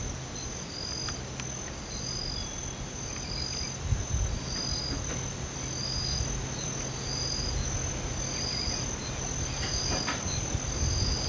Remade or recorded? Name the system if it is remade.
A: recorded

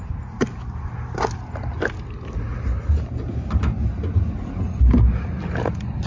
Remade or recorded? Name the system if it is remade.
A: recorded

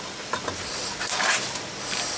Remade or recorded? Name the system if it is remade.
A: recorded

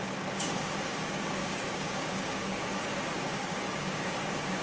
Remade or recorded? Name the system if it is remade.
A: remade, codec, DAC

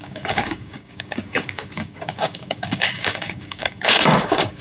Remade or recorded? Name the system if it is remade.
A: remade, codec, DAC